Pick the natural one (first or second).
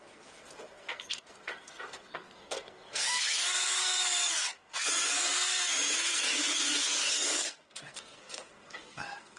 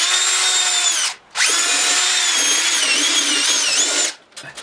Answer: second